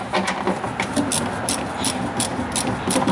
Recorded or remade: recorded